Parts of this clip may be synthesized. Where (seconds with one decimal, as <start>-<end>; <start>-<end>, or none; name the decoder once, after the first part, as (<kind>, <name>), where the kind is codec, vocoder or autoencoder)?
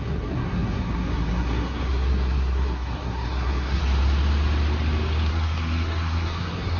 0.0-3.8 (codec, SNAC); 5.3-6.8